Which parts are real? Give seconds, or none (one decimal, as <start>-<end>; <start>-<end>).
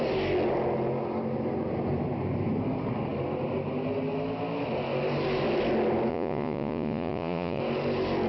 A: 0.0-6.1; 7.6-8.3